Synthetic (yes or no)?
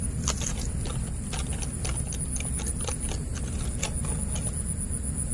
no